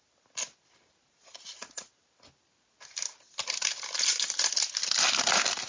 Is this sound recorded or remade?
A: recorded